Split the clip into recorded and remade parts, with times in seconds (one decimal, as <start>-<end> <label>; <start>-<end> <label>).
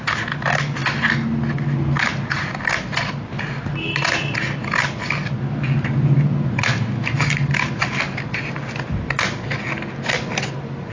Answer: 0.0-10.9 recorded